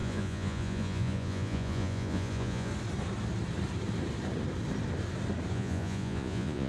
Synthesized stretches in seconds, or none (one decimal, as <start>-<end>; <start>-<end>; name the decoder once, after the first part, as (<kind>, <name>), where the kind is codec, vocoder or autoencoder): 0.0-2.7 (vocoder, Vocos); 5.5-6.7